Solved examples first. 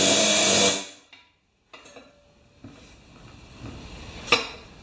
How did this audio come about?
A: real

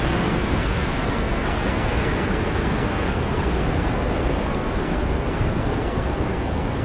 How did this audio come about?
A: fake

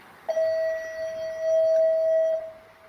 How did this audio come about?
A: real